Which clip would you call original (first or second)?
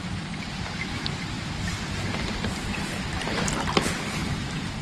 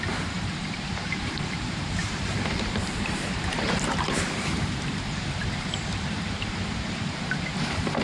first